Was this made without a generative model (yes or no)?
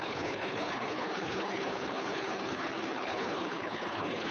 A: no